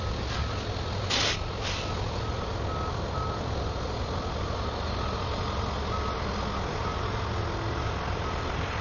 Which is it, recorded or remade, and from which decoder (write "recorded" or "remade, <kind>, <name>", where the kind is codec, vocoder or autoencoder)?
recorded